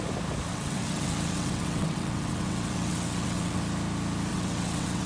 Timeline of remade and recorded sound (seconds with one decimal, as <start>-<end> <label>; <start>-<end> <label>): 0.0-0.5 recorded; 0.5-3.6 remade; 3.6-4.3 recorded; 4.3-5.1 remade